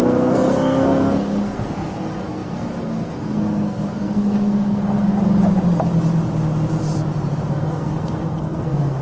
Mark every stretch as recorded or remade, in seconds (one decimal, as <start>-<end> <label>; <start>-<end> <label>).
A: 0.0-5.1 remade; 5.1-7.5 recorded; 7.5-9.0 remade